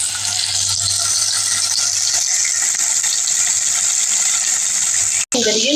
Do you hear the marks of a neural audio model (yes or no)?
no